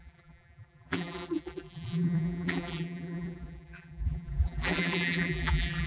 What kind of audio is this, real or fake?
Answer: fake